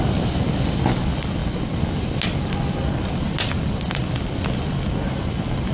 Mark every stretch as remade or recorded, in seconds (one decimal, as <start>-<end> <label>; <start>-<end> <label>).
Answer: 0.0-5.7 recorded

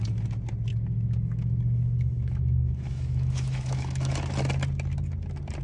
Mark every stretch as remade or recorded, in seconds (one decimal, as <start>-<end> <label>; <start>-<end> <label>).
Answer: 0.0-0.7 recorded; 0.7-4.1 remade; 4.1-5.6 recorded

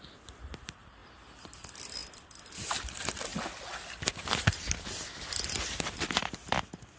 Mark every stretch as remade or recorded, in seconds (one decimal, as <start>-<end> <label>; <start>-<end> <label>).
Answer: 0.0-1.0 remade; 1.0-1.5 recorded; 1.5-2.0 remade; 2.0-2.8 recorded; 2.8-3.3 remade; 3.3-4.1 recorded; 4.1-7.0 remade

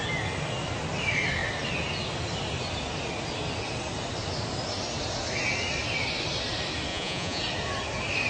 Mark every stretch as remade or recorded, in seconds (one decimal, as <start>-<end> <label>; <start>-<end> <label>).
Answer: 0.0-6.9 recorded; 6.9-7.4 remade; 7.4-8.3 recorded